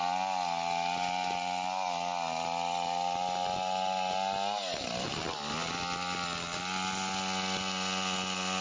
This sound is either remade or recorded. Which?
recorded